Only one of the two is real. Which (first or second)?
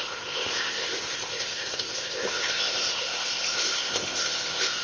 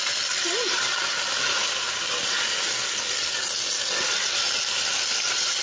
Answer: second